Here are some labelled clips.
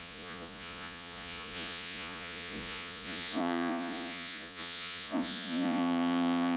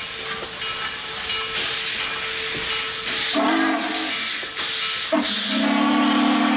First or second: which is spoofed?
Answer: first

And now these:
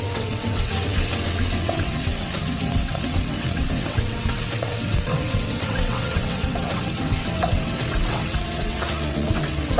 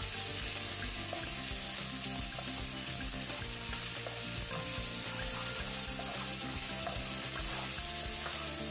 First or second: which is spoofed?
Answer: first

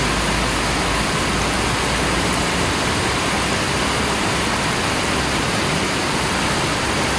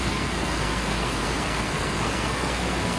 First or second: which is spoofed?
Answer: second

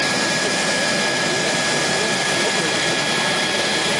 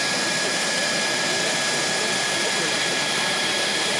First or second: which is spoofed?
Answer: second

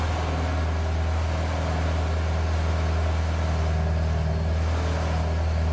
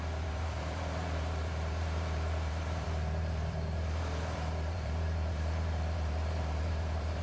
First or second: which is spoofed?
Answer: second